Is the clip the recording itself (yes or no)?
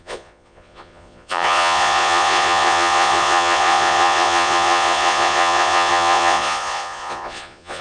no